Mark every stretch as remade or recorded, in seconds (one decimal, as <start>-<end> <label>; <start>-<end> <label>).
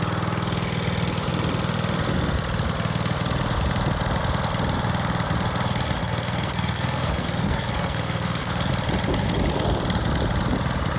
0.0-6.0 recorded; 6.0-8.7 remade; 8.7-11.0 recorded